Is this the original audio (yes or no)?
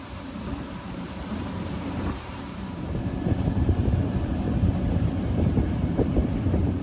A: no